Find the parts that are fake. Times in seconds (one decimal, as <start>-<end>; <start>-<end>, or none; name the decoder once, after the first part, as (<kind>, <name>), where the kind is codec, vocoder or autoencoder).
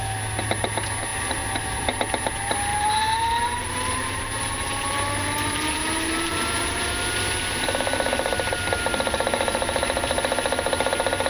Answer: 2.7-7.0 (vocoder, BigVGAN v2)